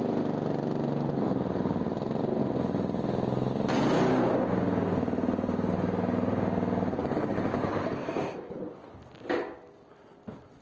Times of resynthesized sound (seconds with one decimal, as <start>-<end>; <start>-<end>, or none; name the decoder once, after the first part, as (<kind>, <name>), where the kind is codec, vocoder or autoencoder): 7.0-7.8 (codec, DAC)